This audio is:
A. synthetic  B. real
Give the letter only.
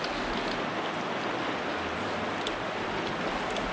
B